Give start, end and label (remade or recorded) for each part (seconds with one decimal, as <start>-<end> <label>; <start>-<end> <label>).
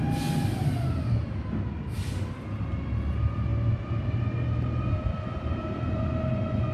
0.0-6.7 recorded